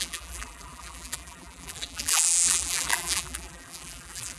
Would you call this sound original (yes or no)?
no